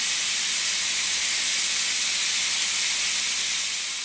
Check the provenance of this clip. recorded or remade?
recorded